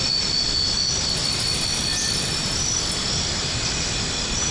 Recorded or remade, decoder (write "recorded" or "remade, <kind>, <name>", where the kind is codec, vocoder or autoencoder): recorded